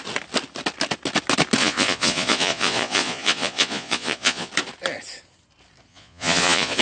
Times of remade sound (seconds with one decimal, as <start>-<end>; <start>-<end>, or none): 1.6-4.5; 5.9-6.8

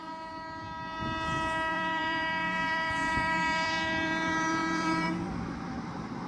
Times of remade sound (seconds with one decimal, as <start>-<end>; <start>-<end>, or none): 1.7-6.3

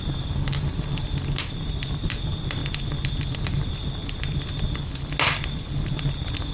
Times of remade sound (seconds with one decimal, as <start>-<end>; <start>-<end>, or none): none

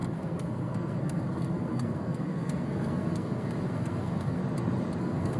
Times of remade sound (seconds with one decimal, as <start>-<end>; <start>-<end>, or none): 0.0-4.4; 5.0-5.4

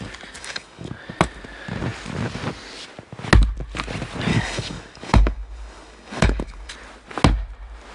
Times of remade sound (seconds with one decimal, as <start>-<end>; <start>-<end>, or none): 0.4-0.9; 4.3-6.7

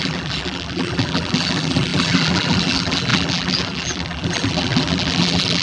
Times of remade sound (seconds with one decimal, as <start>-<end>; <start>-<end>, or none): 0.0-5.6

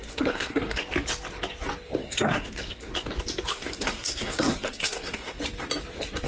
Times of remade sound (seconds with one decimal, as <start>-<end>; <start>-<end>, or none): 0.0-0.8; 2.0-2.9; 3.5-5.4

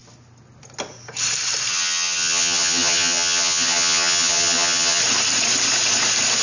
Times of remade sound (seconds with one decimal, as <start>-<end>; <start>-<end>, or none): 1.7-5.0